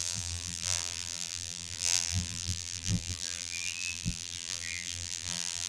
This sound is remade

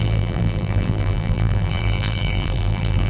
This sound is remade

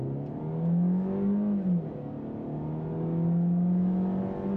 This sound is recorded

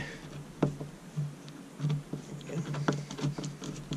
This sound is recorded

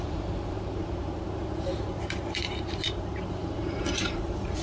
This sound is remade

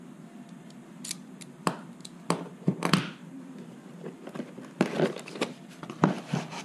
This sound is remade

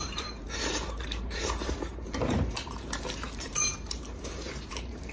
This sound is remade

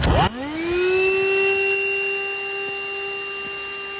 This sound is recorded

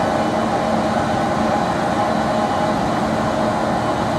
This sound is recorded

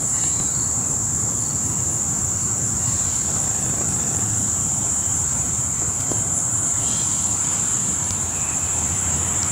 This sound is remade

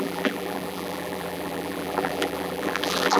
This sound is remade